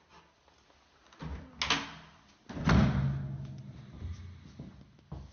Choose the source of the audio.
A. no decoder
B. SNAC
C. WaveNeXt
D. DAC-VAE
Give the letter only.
A